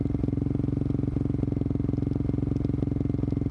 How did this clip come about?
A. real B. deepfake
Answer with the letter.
A